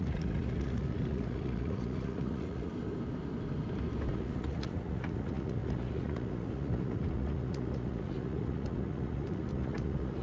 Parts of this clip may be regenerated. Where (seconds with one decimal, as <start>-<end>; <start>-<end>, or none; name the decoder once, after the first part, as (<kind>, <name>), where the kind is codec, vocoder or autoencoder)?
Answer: 0.0-2.7 (vocoder, Vocos); 4.1-10.2

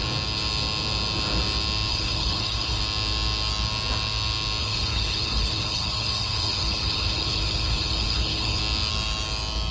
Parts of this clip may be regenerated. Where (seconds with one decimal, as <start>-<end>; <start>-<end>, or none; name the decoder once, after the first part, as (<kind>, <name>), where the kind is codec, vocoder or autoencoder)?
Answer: 1.9-2.8 (codec, HILCodec); 4.6-8.6

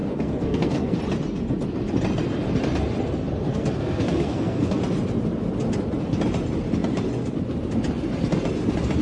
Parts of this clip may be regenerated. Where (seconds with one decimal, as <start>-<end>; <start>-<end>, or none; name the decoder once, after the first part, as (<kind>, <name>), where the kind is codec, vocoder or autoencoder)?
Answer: 0.0-1.0 (codec, SNAC); 3.5-4.8

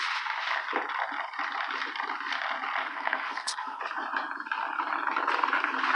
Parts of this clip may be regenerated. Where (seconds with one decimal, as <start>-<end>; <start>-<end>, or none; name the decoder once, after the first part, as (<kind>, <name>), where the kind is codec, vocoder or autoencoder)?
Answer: 2.8-3.8 (codec, SNAC)

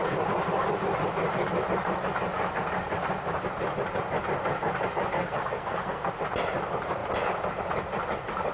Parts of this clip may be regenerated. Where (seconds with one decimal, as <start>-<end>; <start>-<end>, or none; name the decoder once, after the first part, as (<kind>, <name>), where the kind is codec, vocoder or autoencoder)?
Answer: 5.2-6.1 (codec, SNAC)

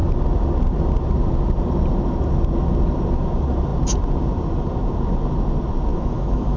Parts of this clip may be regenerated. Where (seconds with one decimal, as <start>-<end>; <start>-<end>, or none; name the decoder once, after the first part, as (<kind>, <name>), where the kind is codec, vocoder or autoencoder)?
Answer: 5.9-6.6 (autoencoder, DAC-VAE)

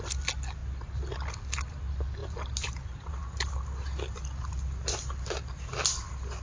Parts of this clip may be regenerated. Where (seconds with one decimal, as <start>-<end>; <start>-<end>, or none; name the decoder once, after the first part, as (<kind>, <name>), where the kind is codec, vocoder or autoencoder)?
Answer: none

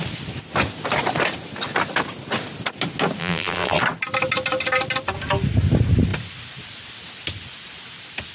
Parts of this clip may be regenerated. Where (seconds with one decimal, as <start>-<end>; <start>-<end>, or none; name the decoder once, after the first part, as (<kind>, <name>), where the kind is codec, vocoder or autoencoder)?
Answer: 3.2-3.8 (vocoder, BigVGAN v2)